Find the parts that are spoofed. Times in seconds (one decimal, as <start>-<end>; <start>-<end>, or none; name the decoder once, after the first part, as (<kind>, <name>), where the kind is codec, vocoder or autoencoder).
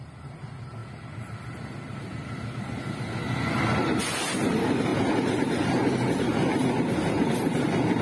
none